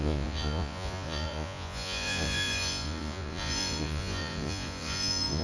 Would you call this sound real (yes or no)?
no